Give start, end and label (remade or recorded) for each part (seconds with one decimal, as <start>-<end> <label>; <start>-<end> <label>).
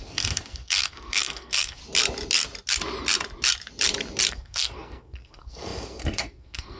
0.0-1.8 remade; 1.8-4.3 recorded; 4.3-6.8 remade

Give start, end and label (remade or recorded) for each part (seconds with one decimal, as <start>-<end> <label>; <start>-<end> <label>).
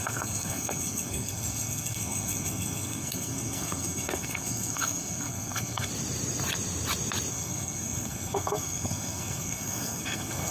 0.0-5.9 remade; 5.9-7.3 recorded; 7.3-10.5 remade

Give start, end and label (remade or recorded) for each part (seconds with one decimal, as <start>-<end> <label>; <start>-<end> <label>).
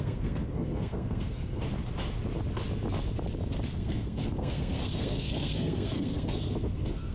0.0-1.6 remade; 1.6-3.7 recorded; 3.7-7.1 remade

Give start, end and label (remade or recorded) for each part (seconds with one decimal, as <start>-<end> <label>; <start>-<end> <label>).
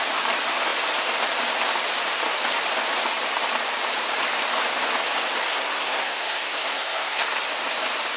0.0-5.5 recorded; 5.5-7.4 remade; 7.4-8.2 recorded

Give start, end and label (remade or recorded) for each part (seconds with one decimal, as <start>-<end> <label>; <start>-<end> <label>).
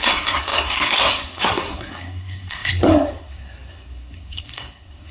0.0-5.1 remade